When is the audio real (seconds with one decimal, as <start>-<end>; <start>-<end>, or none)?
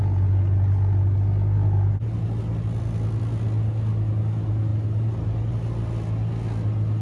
0.0-7.0